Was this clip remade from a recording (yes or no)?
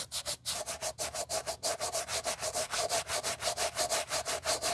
yes